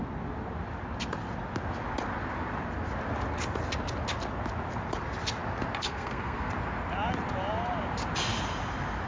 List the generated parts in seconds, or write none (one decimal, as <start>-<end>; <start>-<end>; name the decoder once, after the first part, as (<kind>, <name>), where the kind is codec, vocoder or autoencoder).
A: 5.8-6.5 (codec, SNAC)